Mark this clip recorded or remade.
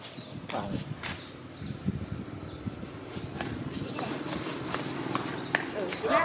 recorded